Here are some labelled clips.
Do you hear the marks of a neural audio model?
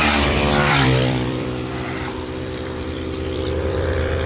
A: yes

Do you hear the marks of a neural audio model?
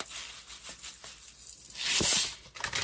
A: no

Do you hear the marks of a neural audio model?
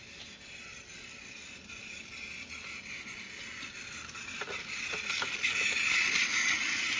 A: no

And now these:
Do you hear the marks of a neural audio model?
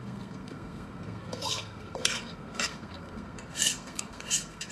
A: yes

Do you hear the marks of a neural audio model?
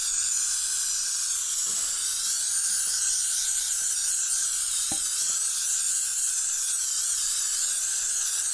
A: no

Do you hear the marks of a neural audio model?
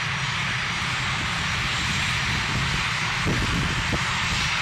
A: no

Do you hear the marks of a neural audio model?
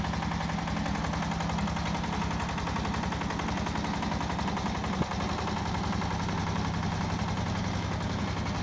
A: no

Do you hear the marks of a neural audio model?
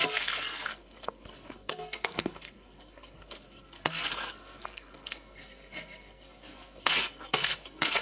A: yes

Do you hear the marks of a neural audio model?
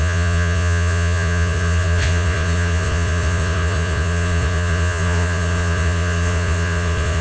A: yes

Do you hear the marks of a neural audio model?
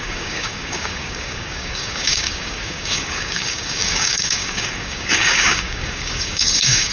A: yes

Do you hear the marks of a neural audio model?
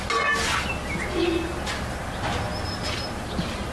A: no